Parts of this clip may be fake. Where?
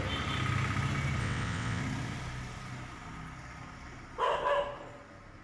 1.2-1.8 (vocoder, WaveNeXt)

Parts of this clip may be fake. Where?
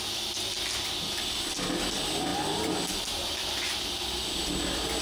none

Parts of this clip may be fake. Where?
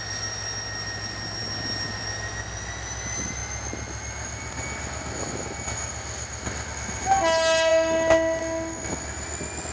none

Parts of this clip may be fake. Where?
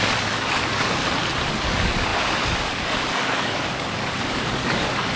0.0-1.0 (codec, DAC); 1.5-5.2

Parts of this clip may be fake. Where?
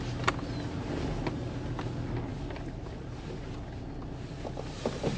none